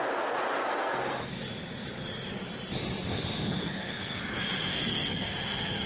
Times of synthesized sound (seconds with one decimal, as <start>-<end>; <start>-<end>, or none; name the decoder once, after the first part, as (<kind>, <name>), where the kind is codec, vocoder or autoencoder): 0.6-1.3 (codec, SNAC); 3.6-4.2; 4.7-5.9